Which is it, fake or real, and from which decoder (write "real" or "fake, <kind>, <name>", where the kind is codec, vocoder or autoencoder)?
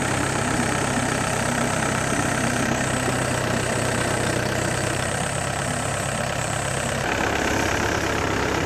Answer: fake, vocoder, BigVGAN v2